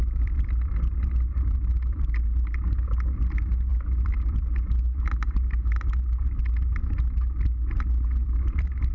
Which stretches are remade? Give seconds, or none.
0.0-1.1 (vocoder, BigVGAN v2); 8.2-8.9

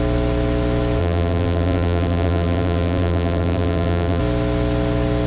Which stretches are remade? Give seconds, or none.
1.0-4.2 (vocoder, BigVGAN v2)

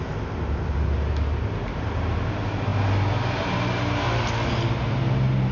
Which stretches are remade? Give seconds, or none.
none

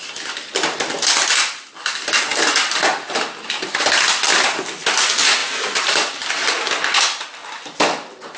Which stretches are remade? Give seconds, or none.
4.3-5.0 (vocoder, BigVGAN v2); 5.4-6.5

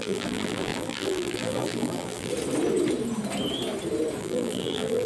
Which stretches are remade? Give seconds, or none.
0.0-2.3 (vocoder, BigVGAN v2); 4.2-5.1